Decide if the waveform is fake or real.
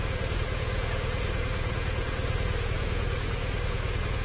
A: fake